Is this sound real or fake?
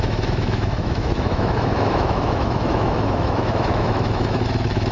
fake